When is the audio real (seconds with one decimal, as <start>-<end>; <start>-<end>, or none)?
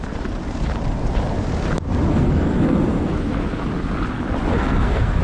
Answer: 0.0-2.1; 3.1-4.5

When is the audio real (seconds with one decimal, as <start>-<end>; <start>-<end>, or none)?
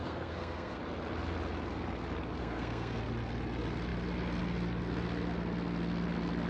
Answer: 0.8-2.4; 3.0-6.5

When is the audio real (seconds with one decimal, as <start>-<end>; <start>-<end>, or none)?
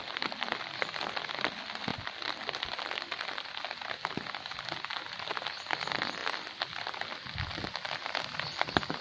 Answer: 0.0-9.0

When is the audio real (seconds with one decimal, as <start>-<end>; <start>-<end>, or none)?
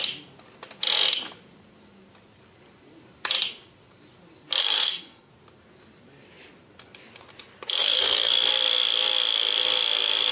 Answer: 0.0-4.6; 5.3-7.8; 8.5-10.3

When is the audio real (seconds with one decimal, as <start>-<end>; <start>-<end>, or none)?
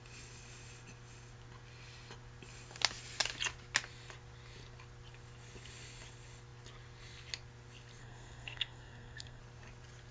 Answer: 0.0-8.0; 9.4-10.1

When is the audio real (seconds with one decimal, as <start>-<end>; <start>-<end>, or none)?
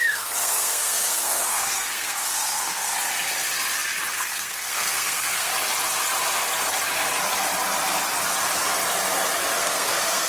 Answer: 2.9-4.1; 5.5-9.6